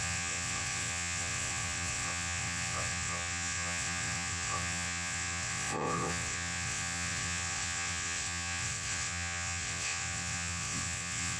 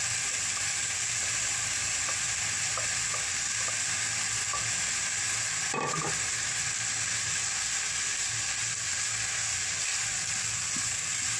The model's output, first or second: first